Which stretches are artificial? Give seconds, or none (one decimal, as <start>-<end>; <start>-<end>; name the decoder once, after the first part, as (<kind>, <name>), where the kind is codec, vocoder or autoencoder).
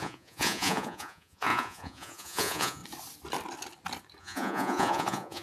0.0-2.8 (vocoder, Vocos); 4.2-5.4